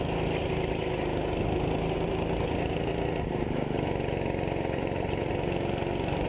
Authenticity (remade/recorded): recorded